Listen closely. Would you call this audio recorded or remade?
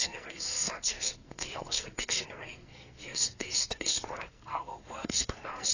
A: remade